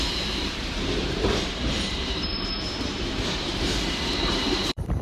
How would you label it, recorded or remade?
remade